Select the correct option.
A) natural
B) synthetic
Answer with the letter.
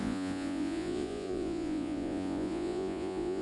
B